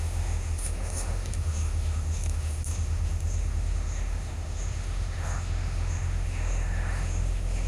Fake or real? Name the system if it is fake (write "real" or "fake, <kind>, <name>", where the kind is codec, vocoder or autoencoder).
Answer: fake, autoencoder, DAC-VAE